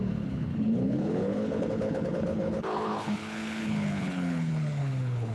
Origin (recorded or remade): remade